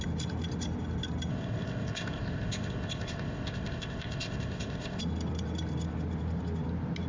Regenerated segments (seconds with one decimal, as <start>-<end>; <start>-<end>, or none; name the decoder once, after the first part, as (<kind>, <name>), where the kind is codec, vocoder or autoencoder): 1.3-5.0 (codec, ZipCodec)